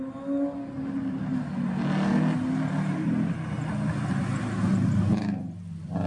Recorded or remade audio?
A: recorded